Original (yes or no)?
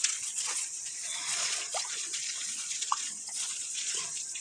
no